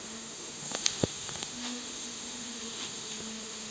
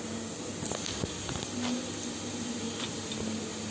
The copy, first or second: first